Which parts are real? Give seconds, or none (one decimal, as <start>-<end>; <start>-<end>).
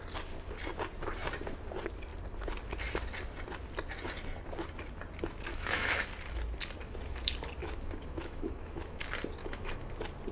0.0-5.5; 6.0-7.6; 9.0-9.4; 9.9-10.3